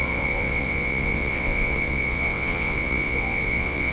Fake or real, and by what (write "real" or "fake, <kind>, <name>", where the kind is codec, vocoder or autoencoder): fake, vocoder, WaveNeXt